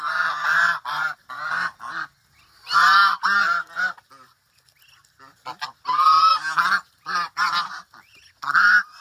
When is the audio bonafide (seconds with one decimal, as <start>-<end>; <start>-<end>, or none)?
0.0-9.0